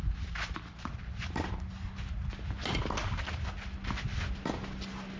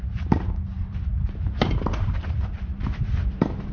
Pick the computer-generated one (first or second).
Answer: second